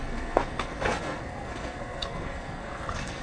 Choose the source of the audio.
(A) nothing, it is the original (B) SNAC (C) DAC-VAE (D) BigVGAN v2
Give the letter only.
B